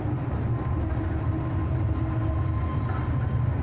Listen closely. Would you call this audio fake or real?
real